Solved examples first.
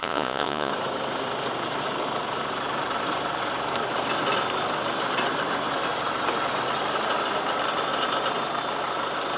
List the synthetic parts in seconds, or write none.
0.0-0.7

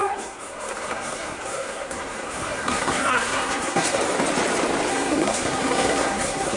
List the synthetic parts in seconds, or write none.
0.0-4.0; 4.9-6.6

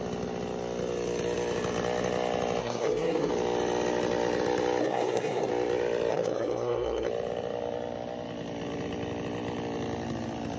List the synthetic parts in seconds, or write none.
2.6-3.3; 4.8-5.5; 6.1-7.1

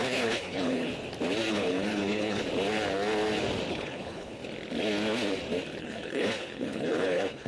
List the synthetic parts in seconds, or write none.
0.0-0.9; 1.5-2.4; 3.7-4.4; 5.8-7.5